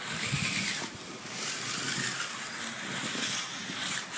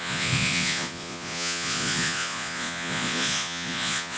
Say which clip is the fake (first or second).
second